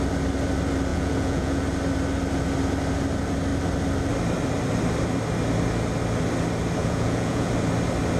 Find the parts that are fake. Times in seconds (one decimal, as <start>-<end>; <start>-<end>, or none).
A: 0.9-1.6; 6.8-7.5